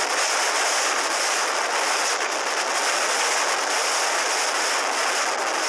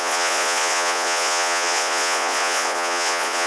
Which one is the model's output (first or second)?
second